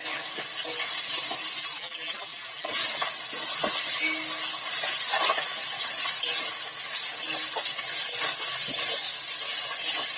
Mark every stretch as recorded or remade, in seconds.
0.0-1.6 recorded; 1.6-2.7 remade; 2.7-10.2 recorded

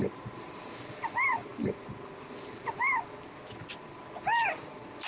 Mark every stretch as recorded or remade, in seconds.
0.0-5.1 recorded

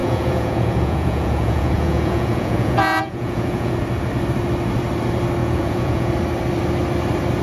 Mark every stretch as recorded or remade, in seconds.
0.0-3.7 remade; 3.7-5.4 recorded; 5.4-6.1 remade; 6.1-7.4 recorded

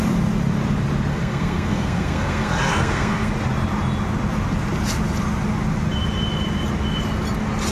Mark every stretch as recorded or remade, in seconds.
0.0-1.1 recorded; 1.1-3.3 remade; 3.3-7.7 recorded

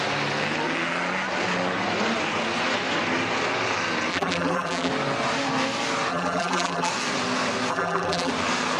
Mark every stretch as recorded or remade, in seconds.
0.0-4.1 recorded; 4.1-4.9 remade; 4.9-6.1 recorded; 6.1-6.9 remade; 6.9-7.7 recorded; 7.7-8.3 remade; 8.3-8.8 recorded